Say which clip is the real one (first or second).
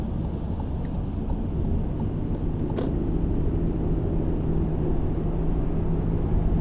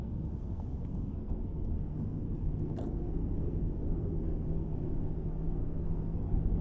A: first